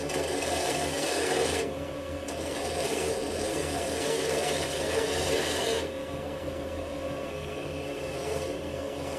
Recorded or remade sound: remade